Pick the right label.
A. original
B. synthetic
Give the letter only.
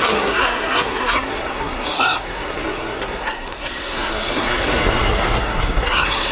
B